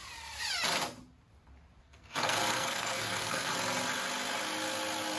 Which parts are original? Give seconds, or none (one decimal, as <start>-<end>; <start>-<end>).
0.0-1.8; 3.5-5.2